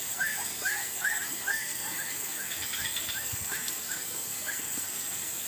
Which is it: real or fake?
fake